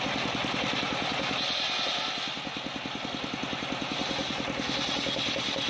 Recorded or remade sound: recorded